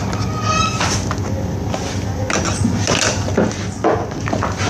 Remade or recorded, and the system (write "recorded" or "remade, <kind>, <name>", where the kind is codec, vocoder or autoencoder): recorded